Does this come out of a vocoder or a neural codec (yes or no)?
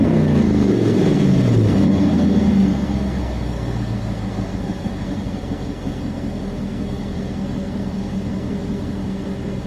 yes